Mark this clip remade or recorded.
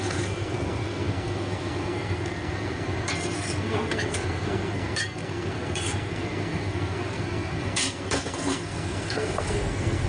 remade